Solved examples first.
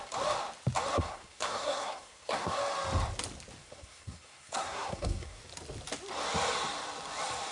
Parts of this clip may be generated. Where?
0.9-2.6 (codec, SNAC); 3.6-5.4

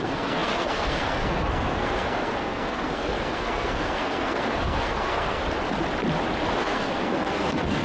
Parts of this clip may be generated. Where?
0.0-5.4 (codec, SNAC); 6.6-7.8

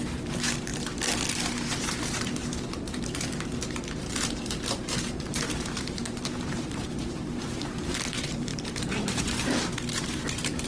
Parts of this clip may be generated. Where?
0.0-0.7 (vocoder, BigVGAN v2); 1.3-10.7

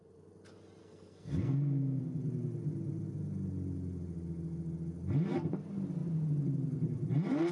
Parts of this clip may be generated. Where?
0.8-2.0 (codec, SNAC)

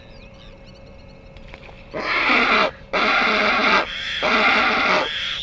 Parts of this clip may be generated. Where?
1.6-2.7 (vocoder, BigVGAN v2)

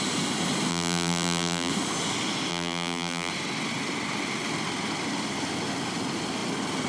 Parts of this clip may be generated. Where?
0.7-1.7 (vocoder, BigVGAN v2); 2.5-3.3

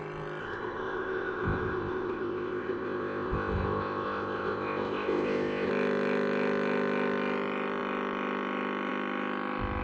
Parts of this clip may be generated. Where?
0.4-5.7 (codec, ZipCodec)